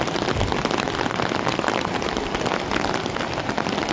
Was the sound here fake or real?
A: real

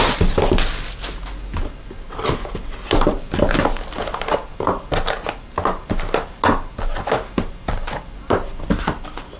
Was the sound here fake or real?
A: real